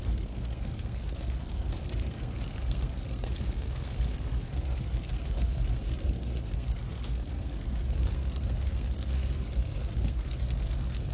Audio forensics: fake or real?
fake